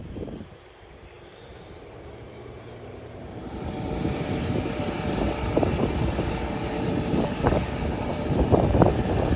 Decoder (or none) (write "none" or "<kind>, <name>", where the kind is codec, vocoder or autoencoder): vocoder, BigVGAN v2